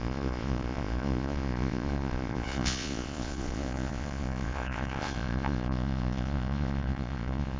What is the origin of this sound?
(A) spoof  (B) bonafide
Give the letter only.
A